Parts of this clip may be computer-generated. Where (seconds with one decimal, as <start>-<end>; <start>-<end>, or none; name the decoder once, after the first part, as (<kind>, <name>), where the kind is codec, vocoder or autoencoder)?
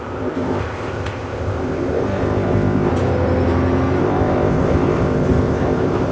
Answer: 0.0-2.9 (codec, ZipCodec); 4.0-6.1